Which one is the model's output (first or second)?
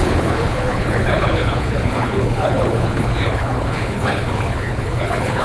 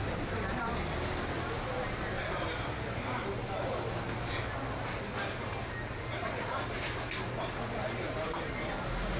first